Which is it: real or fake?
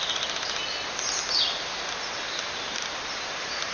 real